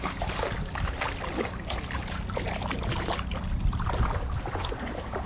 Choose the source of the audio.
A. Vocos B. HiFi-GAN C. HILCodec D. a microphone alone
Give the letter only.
D